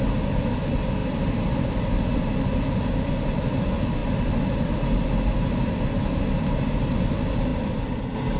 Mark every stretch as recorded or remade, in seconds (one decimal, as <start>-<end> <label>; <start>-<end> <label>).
0.0-1.0 recorded; 1.0-2.9 remade; 2.9-7.5 recorded; 7.5-8.0 remade; 8.0-8.4 recorded